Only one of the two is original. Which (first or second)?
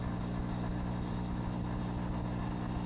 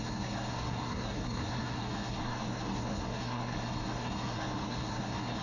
first